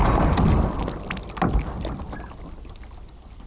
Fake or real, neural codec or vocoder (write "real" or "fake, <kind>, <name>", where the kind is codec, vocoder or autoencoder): real